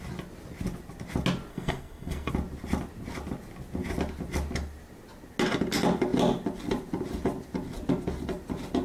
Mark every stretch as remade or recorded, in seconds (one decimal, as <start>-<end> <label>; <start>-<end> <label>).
0.0-1.5 recorded; 1.5-2.3 remade; 2.3-8.8 recorded